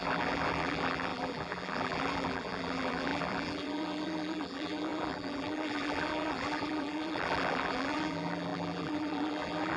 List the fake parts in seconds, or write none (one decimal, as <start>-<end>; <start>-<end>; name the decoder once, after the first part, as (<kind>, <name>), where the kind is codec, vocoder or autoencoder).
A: 0.0-9.8 (vocoder, BigVGAN v2)